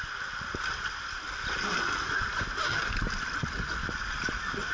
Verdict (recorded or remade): recorded